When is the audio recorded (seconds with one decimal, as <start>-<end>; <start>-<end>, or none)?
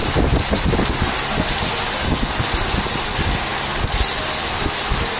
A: 0.0-5.2